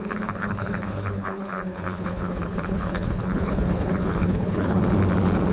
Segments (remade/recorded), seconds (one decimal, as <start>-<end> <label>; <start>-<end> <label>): 0.0-4.8 remade; 4.8-5.5 recorded